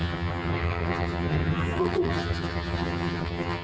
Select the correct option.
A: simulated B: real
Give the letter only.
A